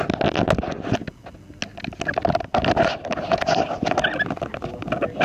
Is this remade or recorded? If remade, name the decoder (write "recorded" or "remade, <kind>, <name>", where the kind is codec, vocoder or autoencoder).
recorded